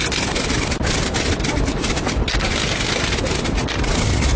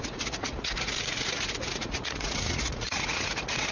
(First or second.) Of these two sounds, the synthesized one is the second